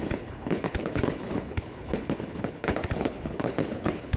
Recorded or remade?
remade